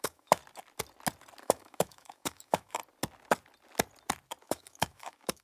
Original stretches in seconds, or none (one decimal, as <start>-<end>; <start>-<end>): 0.4-1.4; 2.8-4.4